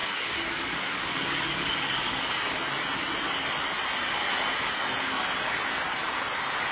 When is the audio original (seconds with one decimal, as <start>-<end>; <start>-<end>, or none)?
2.3-6.7